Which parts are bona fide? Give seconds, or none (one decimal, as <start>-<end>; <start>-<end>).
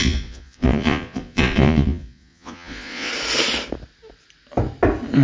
3.1-5.2